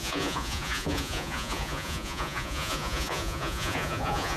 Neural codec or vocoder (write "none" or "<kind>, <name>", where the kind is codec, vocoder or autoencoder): vocoder, Vocos